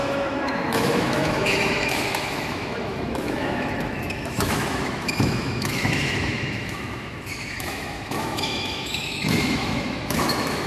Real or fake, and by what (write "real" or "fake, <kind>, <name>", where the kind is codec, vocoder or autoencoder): fake, autoencoder, DAC-VAE